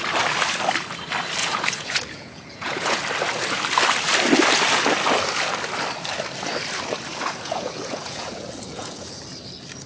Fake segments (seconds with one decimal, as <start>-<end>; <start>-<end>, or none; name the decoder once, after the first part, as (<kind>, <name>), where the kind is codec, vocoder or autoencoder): 1.4-3.0 (vocoder, Vocos); 7.1-9.2

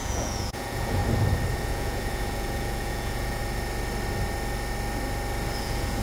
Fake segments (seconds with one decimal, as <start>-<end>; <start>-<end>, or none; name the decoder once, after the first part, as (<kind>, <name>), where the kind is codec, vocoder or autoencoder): 0.0-1.0 (vocoder, Vocos); 1.6-3.4; 5.6-6.0